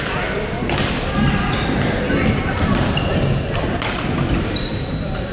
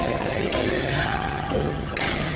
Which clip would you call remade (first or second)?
second